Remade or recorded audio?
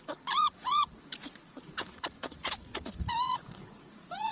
remade